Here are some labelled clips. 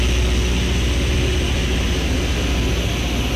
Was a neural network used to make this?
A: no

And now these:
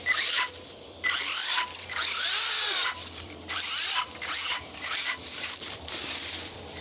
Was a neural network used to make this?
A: yes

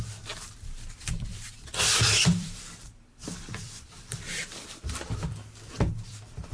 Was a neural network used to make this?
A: yes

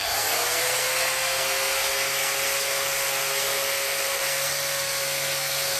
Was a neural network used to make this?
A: yes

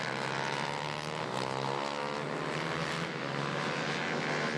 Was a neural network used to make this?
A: no